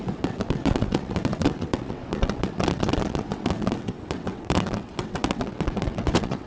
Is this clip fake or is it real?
fake